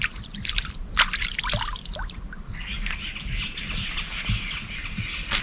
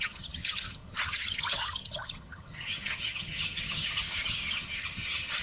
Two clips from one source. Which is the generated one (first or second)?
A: second